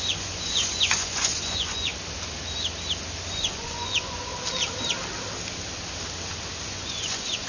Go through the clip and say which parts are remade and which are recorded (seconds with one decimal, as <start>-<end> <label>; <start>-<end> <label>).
0.0-1.9 remade; 1.9-3.3 recorded; 3.3-4.3 remade; 4.3-6.6 recorded; 6.6-7.5 remade